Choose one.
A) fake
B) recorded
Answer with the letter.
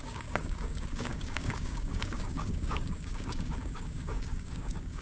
A